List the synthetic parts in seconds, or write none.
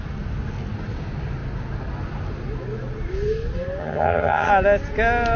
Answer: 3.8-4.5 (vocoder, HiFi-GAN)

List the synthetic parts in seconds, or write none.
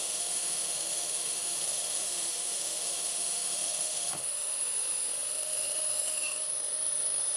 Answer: 0.0-7.4 (autoencoder, DAC-VAE)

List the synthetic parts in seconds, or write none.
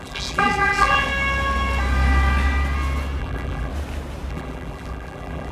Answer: 0.0-1.1 (vocoder, BigVGAN v2); 3.2-3.7; 4.3-5.5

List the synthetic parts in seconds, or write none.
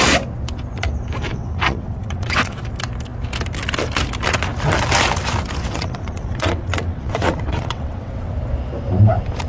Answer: 1.3-2.6 (vocoder, WaveNeXt); 5.6-8.3